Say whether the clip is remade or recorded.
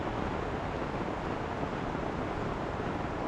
recorded